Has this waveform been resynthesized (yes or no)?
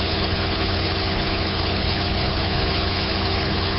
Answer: yes